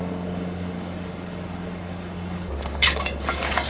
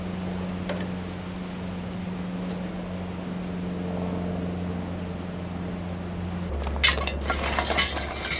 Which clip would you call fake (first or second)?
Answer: first